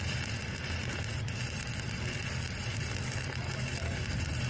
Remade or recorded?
remade